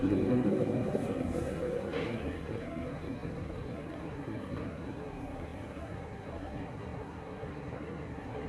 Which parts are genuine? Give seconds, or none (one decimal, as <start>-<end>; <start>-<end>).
none